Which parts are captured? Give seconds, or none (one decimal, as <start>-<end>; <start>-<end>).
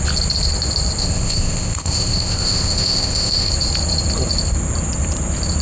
0.0-1.0; 3.5-5.6